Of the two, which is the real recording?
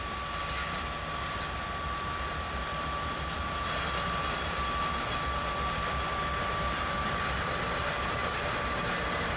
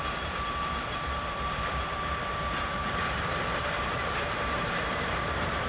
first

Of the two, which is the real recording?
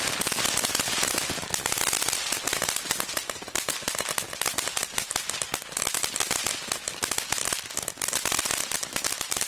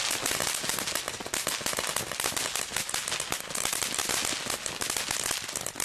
second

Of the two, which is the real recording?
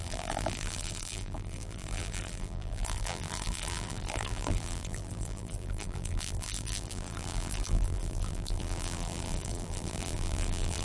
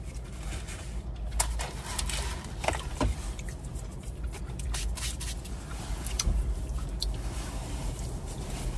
second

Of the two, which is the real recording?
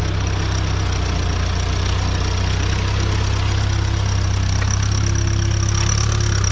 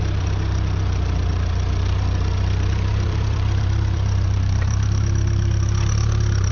first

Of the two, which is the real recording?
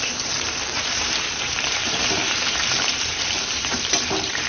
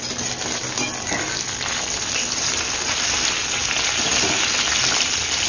second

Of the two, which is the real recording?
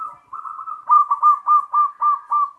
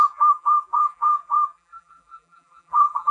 first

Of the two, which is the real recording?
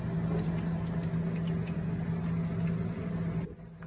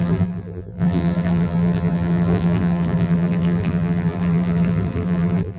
first